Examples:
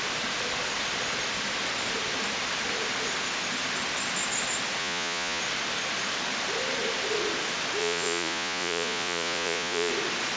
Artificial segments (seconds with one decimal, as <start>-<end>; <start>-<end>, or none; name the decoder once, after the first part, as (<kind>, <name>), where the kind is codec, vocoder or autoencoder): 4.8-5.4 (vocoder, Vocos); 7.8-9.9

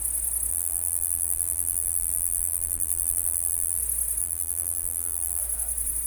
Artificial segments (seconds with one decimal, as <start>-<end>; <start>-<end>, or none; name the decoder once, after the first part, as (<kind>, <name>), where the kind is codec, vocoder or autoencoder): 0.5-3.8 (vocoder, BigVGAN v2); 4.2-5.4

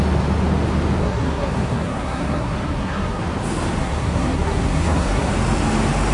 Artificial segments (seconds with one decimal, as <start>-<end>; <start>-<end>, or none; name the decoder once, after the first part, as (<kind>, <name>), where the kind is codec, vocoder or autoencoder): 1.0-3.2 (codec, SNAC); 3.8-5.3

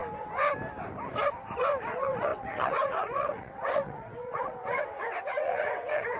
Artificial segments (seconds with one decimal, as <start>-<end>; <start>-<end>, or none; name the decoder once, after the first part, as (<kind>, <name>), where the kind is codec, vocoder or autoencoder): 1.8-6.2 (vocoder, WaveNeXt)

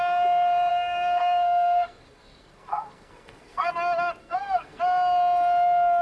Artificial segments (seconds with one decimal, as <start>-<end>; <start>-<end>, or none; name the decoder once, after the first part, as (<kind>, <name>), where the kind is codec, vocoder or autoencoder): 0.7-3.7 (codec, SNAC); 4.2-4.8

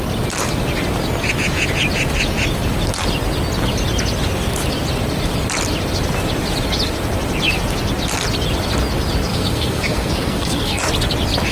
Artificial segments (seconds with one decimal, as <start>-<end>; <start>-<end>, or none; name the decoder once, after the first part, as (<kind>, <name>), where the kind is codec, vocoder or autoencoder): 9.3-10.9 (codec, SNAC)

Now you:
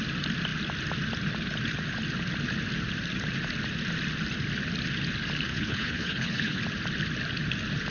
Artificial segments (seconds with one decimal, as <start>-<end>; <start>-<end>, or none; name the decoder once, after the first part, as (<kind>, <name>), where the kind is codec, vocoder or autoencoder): 5.5-6.6 (codec, HILCodec)

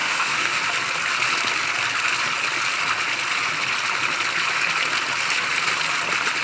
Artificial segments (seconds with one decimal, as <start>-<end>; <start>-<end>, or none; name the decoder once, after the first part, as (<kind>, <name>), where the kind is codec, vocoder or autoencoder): 0.0-0.6 (autoencoder, DAC-VAE)